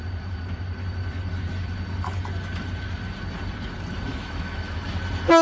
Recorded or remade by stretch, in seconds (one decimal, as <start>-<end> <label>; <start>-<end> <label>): 0.0-4.1 recorded; 4.1-4.8 remade; 4.8-5.4 recorded